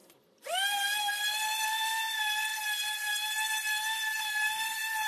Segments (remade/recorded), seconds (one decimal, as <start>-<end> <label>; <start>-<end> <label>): 0.0-5.1 recorded